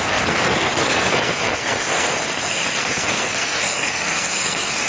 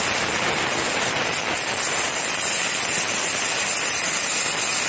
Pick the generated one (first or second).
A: first